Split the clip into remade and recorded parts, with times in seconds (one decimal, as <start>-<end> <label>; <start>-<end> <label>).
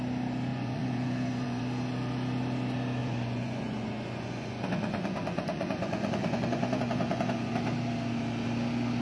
0.0-0.5 recorded; 0.5-1.6 remade; 1.6-3.0 recorded; 3.0-7.5 remade; 7.5-9.0 recorded